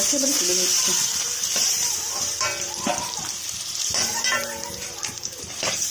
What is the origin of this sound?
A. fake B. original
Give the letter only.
A